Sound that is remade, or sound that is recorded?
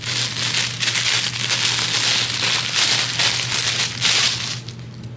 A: recorded